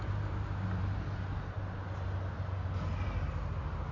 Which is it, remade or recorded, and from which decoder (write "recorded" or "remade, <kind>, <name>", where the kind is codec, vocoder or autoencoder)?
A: recorded